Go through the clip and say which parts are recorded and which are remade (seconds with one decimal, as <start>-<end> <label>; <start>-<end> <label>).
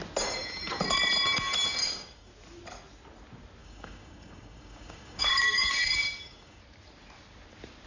0.0-1.8 recorded; 1.8-2.3 remade; 2.3-3.6 recorded; 3.6-6.6 remade; 6.6-7.9 recorded